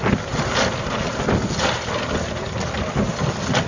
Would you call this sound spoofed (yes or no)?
no